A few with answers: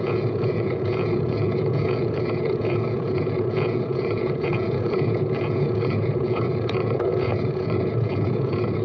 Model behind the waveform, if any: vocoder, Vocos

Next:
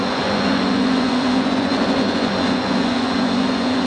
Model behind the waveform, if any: vocoder, Vocos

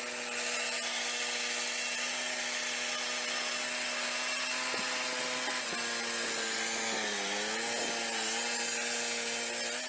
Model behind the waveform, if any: none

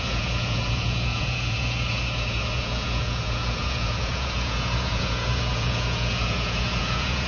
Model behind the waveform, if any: vocoder, Vocos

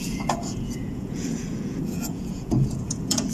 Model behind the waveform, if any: vocoder, Vocos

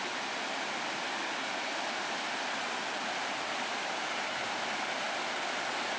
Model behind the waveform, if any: none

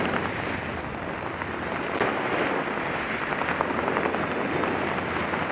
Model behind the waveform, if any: none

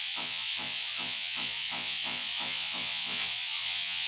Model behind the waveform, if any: vocoder, Vocos